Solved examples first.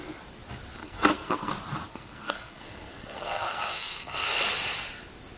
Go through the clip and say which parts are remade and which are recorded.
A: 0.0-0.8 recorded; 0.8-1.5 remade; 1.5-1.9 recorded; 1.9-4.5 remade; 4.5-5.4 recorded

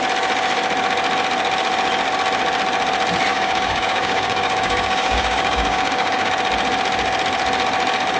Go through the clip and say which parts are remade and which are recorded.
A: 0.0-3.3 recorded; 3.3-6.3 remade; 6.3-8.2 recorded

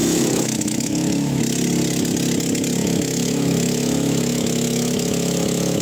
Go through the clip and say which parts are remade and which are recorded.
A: 0.0-1.4 remade; 1.4-2.8 recorded; 2.8-5.8 remade

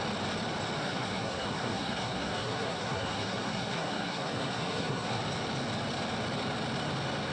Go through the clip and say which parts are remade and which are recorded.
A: 0.0-0.8 recorded; 0.8-5.2 remade; 5.2-7.3 recorded

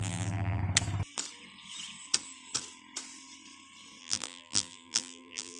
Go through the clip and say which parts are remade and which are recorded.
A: 0.0-0.6 remade; 0.6-4.0 recorded; 4.0-5.6 remade

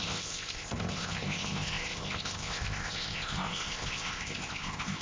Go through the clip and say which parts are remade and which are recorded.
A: 0.0-5.0 remade

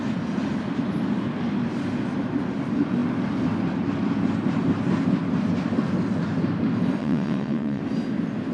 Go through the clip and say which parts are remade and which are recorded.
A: 0.0-7.0 recorded; 7.0-7.8 remade; 7.8-8.5 recorded

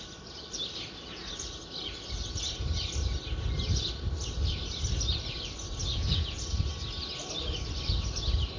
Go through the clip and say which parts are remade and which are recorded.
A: 0.0-5.8 recorded; 5.8-6.5 remade; 6.5-8.6 recorded